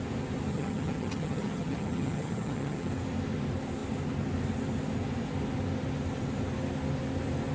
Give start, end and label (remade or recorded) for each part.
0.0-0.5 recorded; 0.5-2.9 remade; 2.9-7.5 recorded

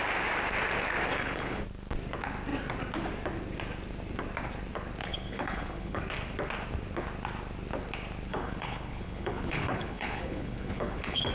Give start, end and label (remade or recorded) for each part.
0.0-1.1 recorded; 1.1-1.6 remade; 1.6-5.0 recorded; 5.0-6.0 remade; 6.0-8.3 recorded; 8.3-11.3 remade

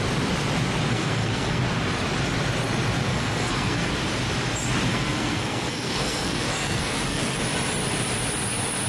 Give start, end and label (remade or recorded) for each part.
0.0-0.9 recorded; 0.9-1.6 remade; 1.6-3.1 recorded; 3.1-3.9 remade; 3.9-4.9 recorded; 4.9-7.4 remade; 7.4-8.9 recorded

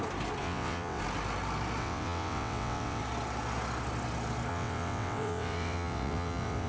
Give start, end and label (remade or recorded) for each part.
0.0-0.4 recorded; 0.4-1.0 remade; 1.0-1.8 recorded; 1.8-3.0 remade; 3.0-4.5 recorded; 4.5-6.7 remade